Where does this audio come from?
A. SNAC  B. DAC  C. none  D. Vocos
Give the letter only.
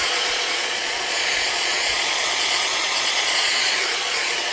D